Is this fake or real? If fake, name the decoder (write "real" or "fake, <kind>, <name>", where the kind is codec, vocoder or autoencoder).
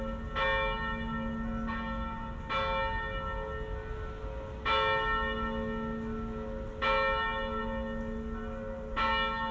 real